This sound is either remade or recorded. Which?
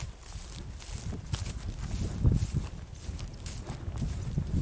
recorded